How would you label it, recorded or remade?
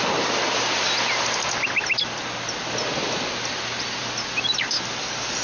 recorded